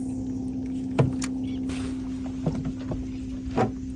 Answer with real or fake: real